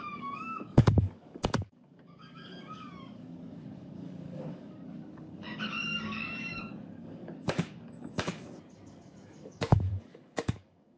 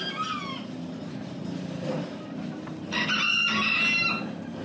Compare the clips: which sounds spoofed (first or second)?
first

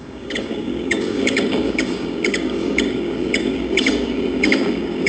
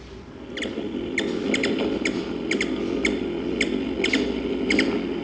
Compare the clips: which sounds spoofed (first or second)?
first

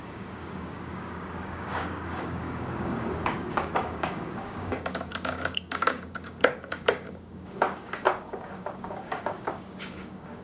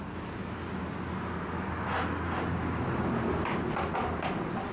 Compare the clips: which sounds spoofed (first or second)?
first